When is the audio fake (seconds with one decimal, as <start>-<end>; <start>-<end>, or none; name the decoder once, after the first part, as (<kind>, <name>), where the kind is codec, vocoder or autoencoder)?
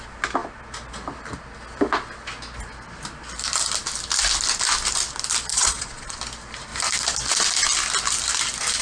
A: 5.5-6.2 (vocoder, Vocos)